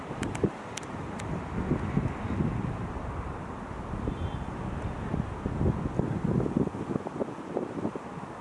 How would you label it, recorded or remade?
recorded